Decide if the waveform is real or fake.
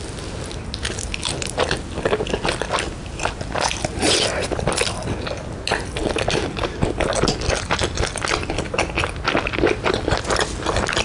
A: real